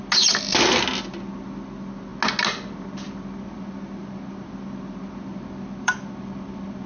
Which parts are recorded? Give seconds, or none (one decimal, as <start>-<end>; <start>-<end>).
0.0-6.9